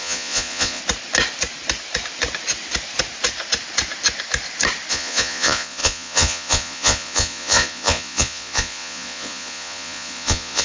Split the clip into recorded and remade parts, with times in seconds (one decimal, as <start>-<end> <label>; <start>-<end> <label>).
0.0-0.8 remade; 0.8-4.9 recorded; 4.9-10.6 remade